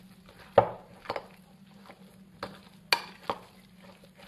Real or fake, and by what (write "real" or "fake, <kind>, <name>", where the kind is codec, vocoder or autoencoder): real